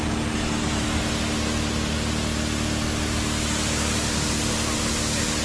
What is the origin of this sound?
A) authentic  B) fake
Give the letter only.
A